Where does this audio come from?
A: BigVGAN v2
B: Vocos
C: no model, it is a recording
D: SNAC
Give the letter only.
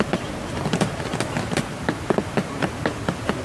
C